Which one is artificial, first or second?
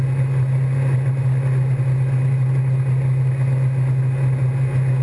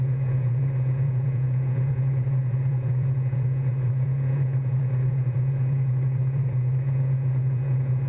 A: second